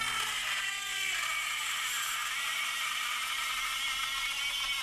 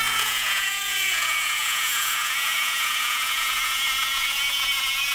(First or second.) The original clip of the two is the first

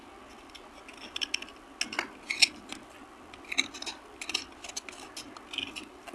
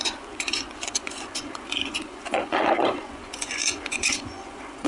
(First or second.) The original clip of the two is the first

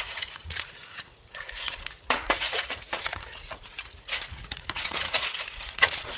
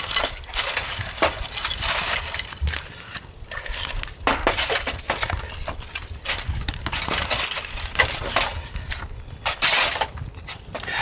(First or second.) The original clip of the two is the second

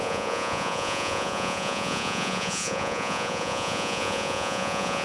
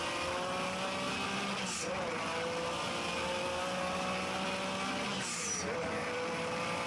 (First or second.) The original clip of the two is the second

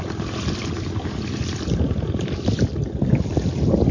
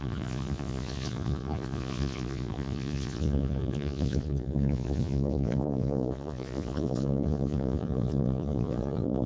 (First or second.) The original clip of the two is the first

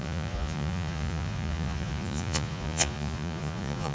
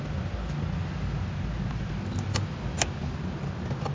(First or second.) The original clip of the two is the second